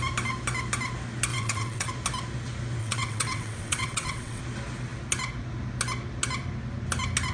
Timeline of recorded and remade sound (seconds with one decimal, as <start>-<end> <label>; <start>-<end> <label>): 0.0-1.3 recorded; 1.3-1.9 remade; 1.9-2.8 recorded; 2.8-4.4 remade; 4.4-7.3 recorded